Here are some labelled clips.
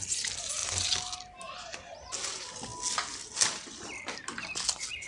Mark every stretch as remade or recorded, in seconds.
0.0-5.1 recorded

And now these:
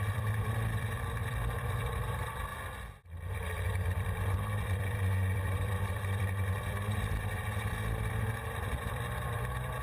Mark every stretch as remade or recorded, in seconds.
0.0-2.5 remade; 2.5-3.3 recorded; 3.3-9.8 remade